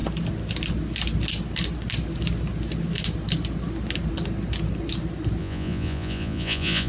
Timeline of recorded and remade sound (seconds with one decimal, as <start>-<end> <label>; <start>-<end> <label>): 0.0-5.4 recorded; 5.4-6.9 remade